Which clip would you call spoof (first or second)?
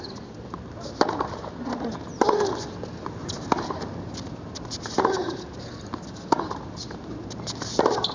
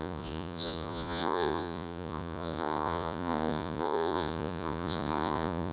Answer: second